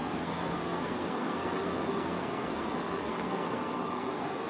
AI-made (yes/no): yes